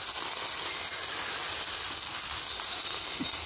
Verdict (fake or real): real